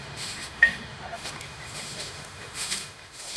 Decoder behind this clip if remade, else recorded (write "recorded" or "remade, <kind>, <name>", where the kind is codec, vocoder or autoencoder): remade, autoencoder, DAC-VAE